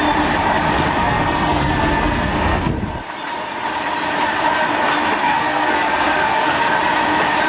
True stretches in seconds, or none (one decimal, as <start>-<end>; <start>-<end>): 0.0-1.0; 2.7-5.2; 6.7-7.5